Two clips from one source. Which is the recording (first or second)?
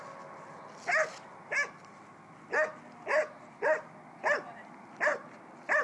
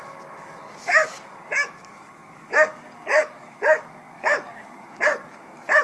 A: first